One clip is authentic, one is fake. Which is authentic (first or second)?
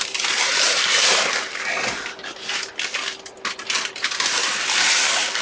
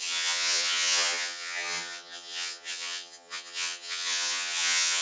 first